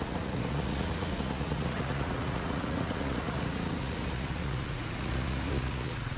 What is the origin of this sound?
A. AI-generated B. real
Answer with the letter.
A